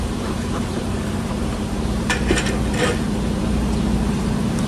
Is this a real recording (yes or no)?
no